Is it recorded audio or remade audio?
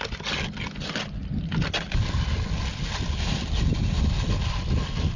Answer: recorded